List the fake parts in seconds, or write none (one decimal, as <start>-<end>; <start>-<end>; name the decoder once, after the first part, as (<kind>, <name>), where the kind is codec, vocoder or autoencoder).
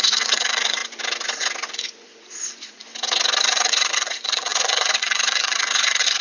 0.0-0.8 (vocoder, Vocos); 1.7-2.9; 3.4-6.2